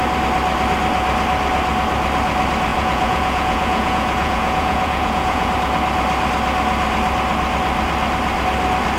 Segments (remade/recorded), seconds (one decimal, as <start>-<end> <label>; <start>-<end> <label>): 0.0-2.7 recorded; 2.7-5.5 remade; 5.5-9.0 recorded